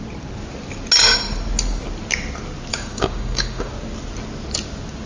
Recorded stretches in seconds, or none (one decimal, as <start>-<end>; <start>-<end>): 0.0-2.7; 3.7-5.1